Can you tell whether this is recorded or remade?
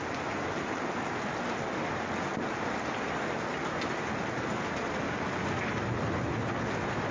recorded